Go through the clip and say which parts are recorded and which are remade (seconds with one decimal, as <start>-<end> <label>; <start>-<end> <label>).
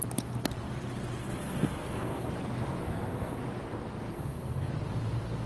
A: 0.0-1.2 recorded; 1.2-2.3 remade; 2.3-2.8 recorded; 2.8-3.4 remade; 3.4-4.1 recorded; 4.1-4.7 remade; 4.7-5.5 recorded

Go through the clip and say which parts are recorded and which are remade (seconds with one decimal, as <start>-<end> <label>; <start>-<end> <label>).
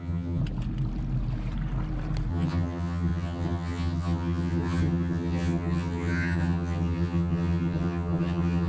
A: 0.0-0.4 remade; 0.4-2.3 recorded; 2.3-8.7 remade